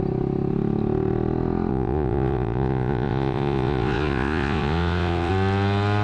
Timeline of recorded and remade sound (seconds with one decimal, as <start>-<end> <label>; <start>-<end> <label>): 0.0-1.7 recorded; 1.7-5.3 remade; 5.3-6.0 recorded